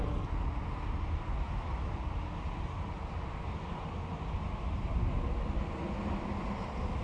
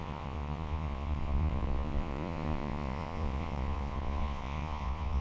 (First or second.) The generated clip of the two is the second